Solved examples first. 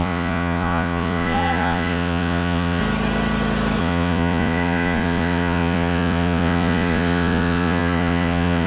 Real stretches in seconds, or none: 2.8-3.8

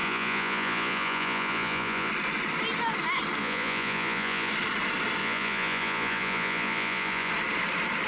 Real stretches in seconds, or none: 2.1-3.4; 4.5-5.2; 7.3-8.1